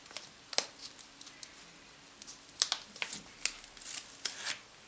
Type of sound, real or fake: real